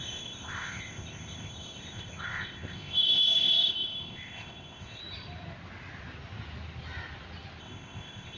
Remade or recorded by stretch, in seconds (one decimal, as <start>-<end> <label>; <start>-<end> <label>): 0.0-5.0 remade; 5.0-7.6 recorded; 7.6-8.4 remade